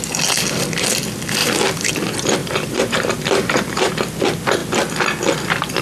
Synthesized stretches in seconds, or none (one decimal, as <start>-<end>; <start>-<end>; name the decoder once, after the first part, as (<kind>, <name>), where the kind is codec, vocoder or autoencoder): 1.4-1.9 (vocoder, BigVGAN v2); 2.4-3.9